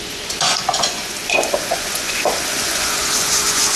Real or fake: fake